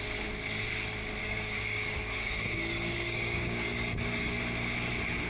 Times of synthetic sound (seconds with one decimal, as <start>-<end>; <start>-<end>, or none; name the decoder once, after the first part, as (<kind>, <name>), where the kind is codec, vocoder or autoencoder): 1.2-4.4 (codec, DAC)